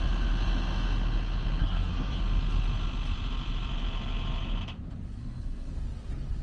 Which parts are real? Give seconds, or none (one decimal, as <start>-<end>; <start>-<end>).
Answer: 0.0-1.6; 2.2-5.2; 5.7-6.4